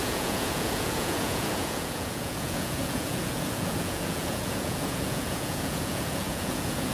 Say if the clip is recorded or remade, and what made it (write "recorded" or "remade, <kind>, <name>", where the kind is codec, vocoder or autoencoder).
remade, vocoder, Vocos